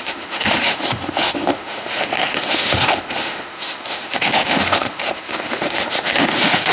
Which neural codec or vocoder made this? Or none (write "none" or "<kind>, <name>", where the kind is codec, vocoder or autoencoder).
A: autoencoder, DAC-VAE